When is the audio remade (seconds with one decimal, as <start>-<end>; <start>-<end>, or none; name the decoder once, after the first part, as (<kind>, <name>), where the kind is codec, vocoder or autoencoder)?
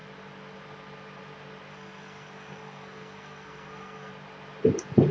1.7-4.1 (codec, SNAC)